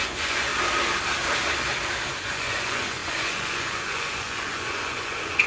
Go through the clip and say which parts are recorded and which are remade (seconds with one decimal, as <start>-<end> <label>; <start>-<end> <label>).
0.0-0.5 remade; 0.5-2.1 recorded; 2.1-5.5 remade